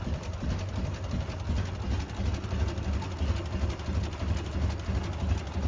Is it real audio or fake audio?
real